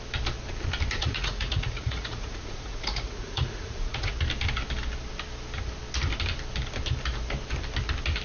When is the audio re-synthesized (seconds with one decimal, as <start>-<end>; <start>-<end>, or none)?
1.0-4.2